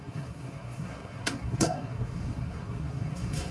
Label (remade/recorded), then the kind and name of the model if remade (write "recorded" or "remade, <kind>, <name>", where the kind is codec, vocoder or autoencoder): remade, codec, SNAC